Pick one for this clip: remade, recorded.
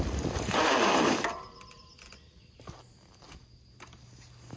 recorded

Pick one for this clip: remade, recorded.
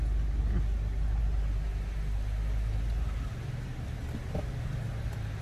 recorded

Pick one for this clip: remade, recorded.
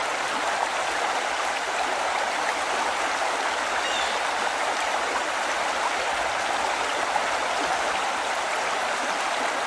recorded